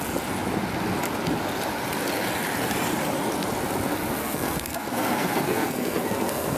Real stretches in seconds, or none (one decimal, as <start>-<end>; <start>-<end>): 0.0-4.2